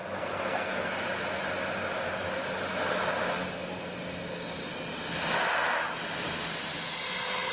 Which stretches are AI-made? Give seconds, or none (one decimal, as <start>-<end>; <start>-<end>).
0.0-0.9

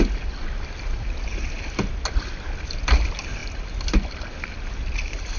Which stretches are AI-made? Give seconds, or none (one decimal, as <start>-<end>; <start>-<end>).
none

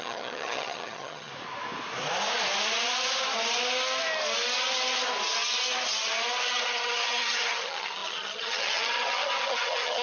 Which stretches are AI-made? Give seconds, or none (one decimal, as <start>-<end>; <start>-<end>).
0.0-1.3; 6.5-10.0